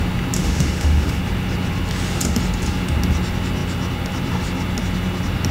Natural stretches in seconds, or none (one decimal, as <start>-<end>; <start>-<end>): 0.0-0.4; 1.2-5.5